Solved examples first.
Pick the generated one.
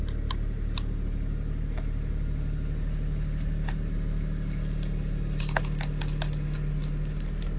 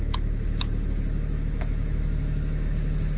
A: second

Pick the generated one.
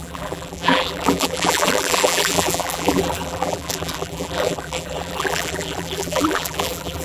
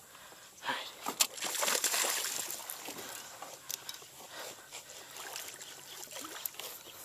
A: first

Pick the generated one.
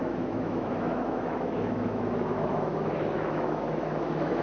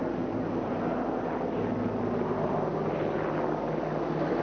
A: first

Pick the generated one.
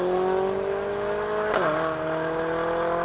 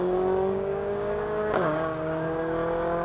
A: second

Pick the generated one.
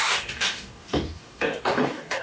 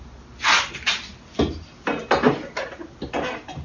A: first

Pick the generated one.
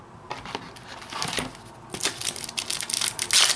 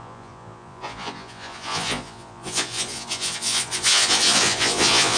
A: second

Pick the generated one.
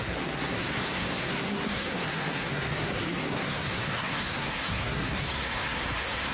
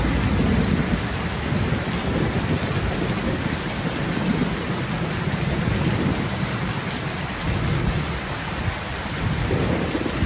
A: first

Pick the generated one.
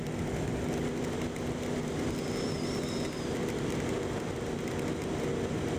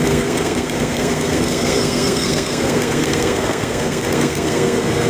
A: second